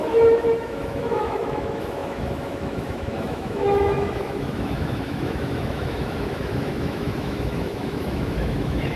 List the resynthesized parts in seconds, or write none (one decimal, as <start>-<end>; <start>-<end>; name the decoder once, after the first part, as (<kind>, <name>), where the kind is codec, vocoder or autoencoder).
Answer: 0.0-9.0 (autoencoder, DAC-VAE)